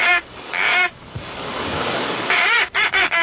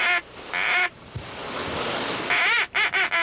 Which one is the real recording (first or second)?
second